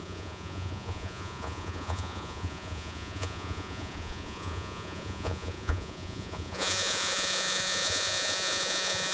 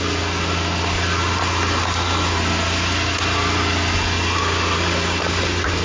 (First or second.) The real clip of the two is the second